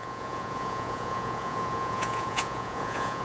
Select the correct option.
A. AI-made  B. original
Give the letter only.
A